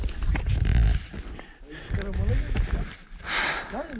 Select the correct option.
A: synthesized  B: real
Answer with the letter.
B